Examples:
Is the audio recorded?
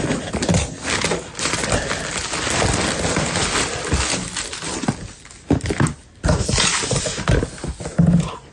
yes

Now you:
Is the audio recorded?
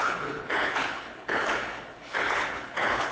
no